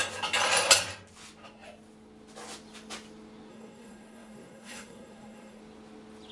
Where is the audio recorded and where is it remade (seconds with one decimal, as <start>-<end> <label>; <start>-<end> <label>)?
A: 0.0-3.5 recorded; 3.5-5.6 remade; 5.6-6.3 recorded